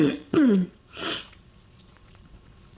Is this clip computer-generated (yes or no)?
yes